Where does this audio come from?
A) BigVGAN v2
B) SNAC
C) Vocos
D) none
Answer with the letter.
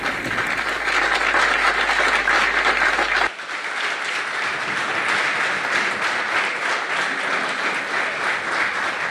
D